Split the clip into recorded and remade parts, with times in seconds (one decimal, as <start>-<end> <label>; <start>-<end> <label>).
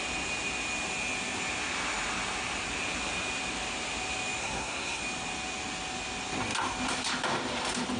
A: 0.0-4.4 recorded; 4.4-5.0 remade; 5.0-8.0 recorded